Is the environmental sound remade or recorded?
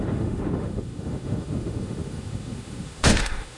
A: remade